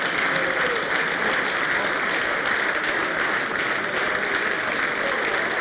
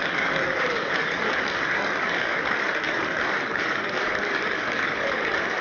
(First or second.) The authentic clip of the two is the first